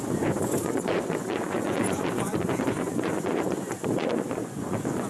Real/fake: fake